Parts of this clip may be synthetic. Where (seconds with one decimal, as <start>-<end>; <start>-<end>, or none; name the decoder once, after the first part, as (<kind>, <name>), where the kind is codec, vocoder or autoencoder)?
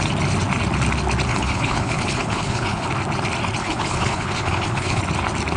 1.3-2.9 (codec, HILCodec); 3.6-5.0